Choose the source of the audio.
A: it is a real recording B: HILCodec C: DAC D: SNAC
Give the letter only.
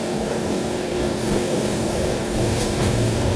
C